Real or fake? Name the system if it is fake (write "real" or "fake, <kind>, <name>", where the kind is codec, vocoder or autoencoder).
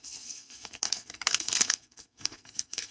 fake, codec, SNAC